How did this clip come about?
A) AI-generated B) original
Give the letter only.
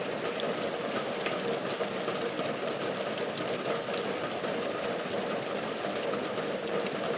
A